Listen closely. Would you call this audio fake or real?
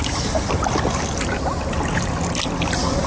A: real